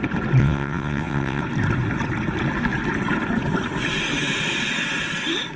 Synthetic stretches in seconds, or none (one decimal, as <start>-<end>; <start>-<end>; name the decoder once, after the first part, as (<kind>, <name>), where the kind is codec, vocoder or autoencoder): 0.4-1.4 (vocoder, WaveNeXt)